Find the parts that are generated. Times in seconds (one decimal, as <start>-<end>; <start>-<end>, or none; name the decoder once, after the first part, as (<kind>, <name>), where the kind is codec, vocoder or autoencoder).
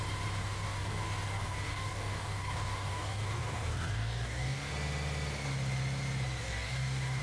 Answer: 0.4-4.7 (codec, DAC); 6.4-7.2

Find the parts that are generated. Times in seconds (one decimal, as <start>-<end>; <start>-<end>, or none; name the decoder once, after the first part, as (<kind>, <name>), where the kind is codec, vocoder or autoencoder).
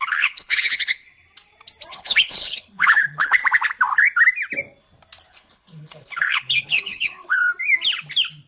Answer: 0.0-1.1 (codec, HILCodec); 1.9-3.4; 5.3-7.5